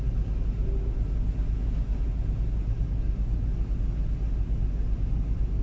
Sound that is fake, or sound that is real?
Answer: real